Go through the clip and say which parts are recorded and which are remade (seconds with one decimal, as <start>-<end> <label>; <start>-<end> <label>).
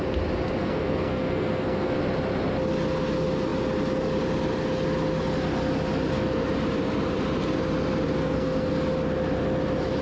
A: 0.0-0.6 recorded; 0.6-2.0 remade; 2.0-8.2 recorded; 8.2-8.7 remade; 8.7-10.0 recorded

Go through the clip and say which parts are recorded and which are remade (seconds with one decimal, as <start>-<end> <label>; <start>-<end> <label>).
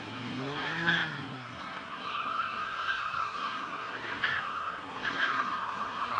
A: 0.0-6.2 remade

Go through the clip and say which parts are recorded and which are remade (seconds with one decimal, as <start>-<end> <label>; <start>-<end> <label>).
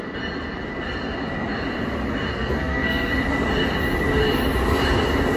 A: 0.0-2.3 recorded; 2.3-3.1 remade; 3.1-5.4 recorded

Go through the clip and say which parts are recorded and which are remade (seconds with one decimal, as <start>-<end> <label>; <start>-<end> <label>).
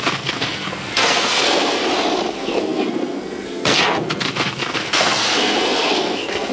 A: 0.0-1.8 remade; 1.8-2.3 recorded; 2.3-6.5 remade